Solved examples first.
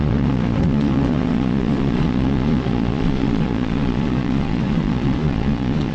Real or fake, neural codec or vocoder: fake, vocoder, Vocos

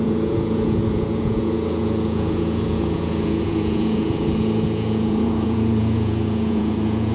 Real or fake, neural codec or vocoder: fake, vocoder, Vocos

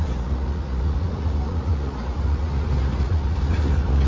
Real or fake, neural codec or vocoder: fake, vocoder, Vocos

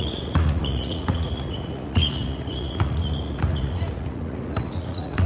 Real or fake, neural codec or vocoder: fake, vocoder, Vocos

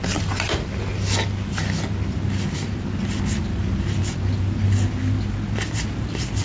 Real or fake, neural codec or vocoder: real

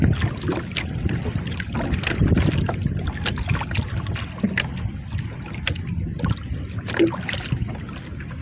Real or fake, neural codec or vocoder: real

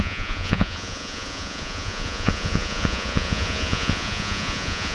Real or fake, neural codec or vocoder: fake, vocoder, Vocos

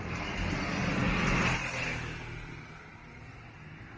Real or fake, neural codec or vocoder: real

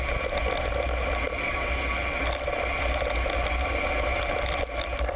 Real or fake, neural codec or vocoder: real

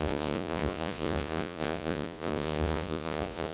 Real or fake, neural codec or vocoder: fake, vocoder, Vocos